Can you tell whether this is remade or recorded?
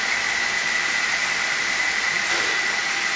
recorded